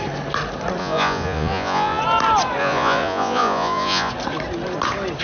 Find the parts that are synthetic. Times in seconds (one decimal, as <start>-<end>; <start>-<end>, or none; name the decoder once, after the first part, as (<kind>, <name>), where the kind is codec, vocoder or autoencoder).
0.8-2.0 (vocoder, Vocos); 2.6-4.1